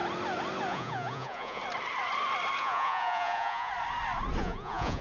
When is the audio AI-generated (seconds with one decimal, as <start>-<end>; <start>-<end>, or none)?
0.7-1.6; 2.6-3.7; 4.4-5.0